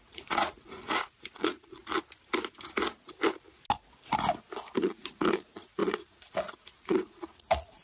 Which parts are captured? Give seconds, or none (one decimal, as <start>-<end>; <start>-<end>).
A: 1.8-4.8